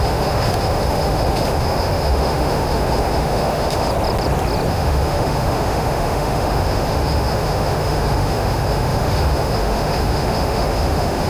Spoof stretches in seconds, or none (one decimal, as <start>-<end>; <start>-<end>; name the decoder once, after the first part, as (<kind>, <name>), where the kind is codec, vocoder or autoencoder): 0.0-3.9 (autoencoder, DAC-VAE); 4.7-11.3